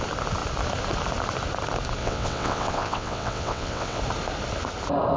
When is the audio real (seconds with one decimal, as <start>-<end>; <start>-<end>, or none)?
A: 0.0-2.0; 4.0-5.2